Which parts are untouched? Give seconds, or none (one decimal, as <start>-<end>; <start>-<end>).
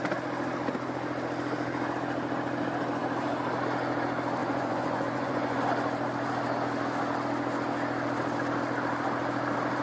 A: 0.0-4.4; 5.6-9.8